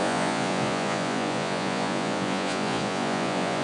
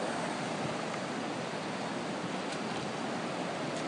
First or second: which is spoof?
first